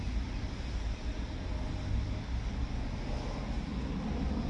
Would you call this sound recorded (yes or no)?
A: yes